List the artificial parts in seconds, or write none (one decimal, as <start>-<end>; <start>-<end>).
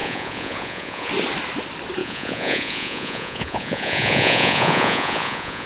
0.0-1.1; 2.0-5.7